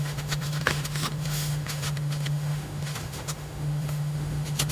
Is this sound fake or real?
fake